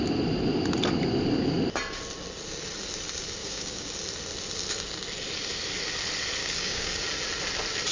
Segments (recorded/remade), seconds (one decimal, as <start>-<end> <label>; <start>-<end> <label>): 0.0-3.4 recorded; 3.4-3.9 remade; 3.9-6.4 recorded; 6.4-7.0 remade; 7.0-7.9 recorded